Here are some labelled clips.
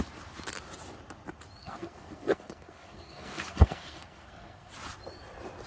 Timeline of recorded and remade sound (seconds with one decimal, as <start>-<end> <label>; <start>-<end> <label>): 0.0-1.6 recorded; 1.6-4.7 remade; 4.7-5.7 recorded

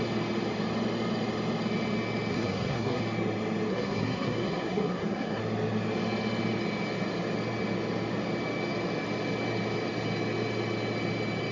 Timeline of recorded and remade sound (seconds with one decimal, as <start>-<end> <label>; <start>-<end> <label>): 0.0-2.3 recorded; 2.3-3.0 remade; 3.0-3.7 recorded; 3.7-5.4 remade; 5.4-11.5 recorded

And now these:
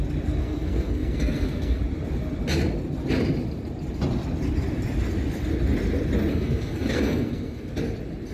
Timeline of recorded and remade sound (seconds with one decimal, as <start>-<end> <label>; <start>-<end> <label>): 0.0-0.4 recorded; 0.4-1.8 remade; 1.8-6.3 recorded; 6.3-7.7 remade; 7.7-8.3 recorded